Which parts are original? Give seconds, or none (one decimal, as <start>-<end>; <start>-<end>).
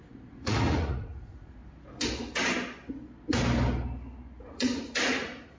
1.6-4.4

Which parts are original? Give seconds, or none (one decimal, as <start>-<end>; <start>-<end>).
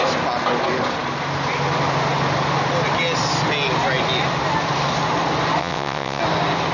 0.0-5.6; 6.2-6.7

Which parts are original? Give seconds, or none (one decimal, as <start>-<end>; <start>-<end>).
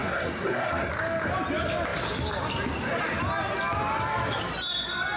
0.9-5.2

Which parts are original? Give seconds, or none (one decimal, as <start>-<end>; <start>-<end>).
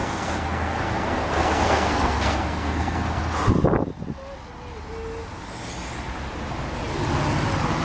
3.2-7.8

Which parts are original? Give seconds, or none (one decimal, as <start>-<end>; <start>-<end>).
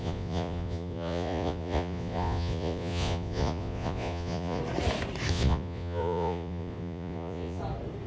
4.6-5.3; 7.6-8.1